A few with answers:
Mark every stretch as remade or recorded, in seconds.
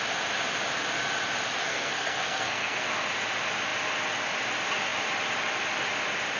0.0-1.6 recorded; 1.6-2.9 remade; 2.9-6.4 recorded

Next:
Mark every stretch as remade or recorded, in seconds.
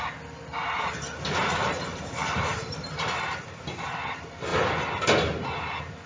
0.0-1.9 recorded; 1.9-4.1 remade; 4.1-6.1 recorded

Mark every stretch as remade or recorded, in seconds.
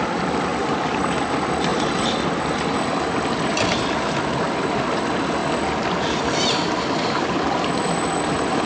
0.0-8.7 recorded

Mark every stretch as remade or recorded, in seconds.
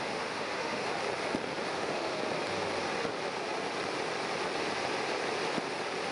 0.0-0.8 remade; 0.8-1.7 recorded; 1.7-2.1 remade; 2.1-6.1 recorded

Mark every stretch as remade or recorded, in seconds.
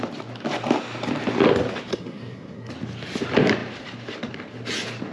0.0-1.9 recorded; 1.9-2.7 remade; 2.7-5.1 recorded